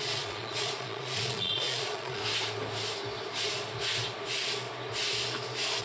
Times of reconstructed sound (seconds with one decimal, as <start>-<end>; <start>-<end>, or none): 0.0-2.2